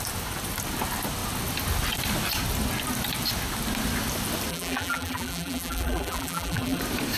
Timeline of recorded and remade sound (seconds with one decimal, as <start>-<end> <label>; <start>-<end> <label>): 0.0-4.5 recorded; 4.5-6.8 remade; 6.8-7.2 recorded